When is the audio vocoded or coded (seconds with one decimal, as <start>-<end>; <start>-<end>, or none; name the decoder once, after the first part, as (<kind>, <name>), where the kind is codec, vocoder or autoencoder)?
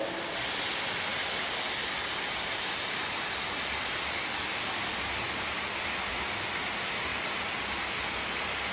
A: none